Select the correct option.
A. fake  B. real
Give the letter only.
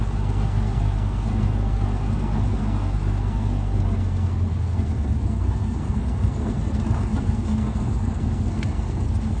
A